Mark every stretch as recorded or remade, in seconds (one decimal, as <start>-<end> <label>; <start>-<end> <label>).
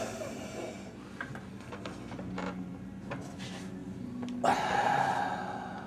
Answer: 0.0-1.5 recorded; 1.5-2.1 remade; 2.1-5.9 recorded